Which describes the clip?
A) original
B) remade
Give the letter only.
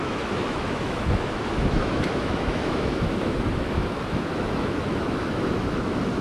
B